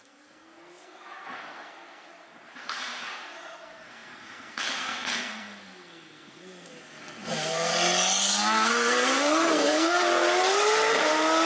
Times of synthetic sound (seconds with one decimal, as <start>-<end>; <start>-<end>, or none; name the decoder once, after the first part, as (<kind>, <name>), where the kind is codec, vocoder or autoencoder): 0.0-7.7 (codec, SNAC); 8.2-10.1